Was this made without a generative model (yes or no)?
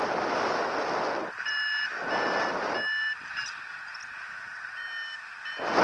yes